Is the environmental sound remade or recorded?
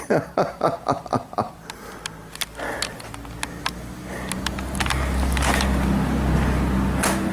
recorded